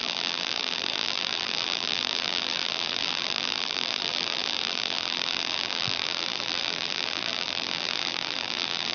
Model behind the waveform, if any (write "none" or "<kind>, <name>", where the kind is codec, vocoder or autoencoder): vocoder, BigVGAN v2